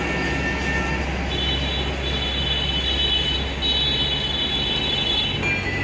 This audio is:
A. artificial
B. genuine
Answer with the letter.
B